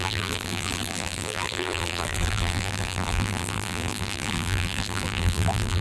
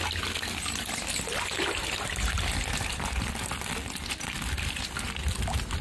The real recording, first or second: second